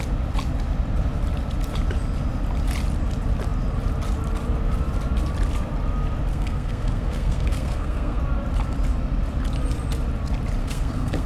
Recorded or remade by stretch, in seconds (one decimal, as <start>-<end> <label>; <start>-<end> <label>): 0.0-6.3 recorded; 6.3-8.2 remade; 8.2-10.6 recorded; 10.6-11.3 remade